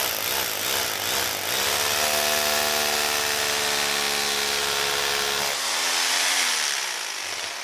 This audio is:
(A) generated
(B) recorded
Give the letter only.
B